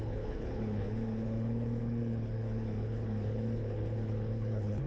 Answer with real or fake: fake